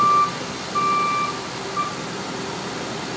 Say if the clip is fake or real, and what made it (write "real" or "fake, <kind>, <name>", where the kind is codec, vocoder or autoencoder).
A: real